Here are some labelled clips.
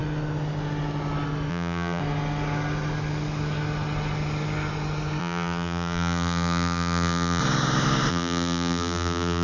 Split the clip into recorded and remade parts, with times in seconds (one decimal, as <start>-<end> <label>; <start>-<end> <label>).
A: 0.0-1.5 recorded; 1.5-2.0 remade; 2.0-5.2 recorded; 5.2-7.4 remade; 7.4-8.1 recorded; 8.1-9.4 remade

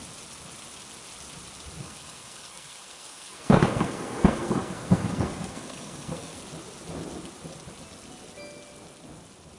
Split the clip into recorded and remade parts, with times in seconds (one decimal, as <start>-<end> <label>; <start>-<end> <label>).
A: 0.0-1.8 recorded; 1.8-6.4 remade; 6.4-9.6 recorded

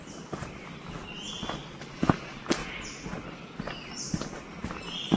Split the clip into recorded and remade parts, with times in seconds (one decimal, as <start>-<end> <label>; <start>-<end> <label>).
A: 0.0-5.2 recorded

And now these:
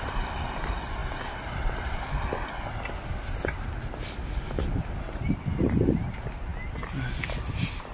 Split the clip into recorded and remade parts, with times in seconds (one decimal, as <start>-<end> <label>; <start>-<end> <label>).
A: 0.0-7.9 recorded

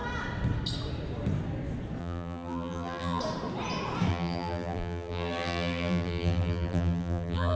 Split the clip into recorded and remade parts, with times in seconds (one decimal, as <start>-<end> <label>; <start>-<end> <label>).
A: 0.0-2.0 recorded; 2.0-3.2 remade; 3.2-4.1 recorded; 4.1-7.6 remade